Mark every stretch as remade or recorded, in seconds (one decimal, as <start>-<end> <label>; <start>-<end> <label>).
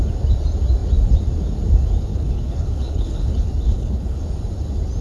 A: 0.0-2.1 recorded; 2.1-4.2 remade; 4.2-5.0 recorded